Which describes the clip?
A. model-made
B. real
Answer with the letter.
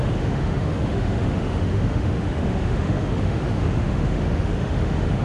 A